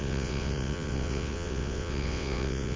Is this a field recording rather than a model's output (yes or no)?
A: no